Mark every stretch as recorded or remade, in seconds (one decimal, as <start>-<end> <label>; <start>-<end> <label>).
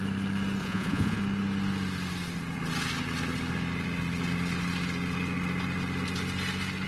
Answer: 0.0-0.6 recorded; 0.6-1.2 remade; 1.2-6.9 recorded